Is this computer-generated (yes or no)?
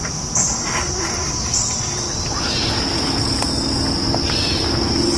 no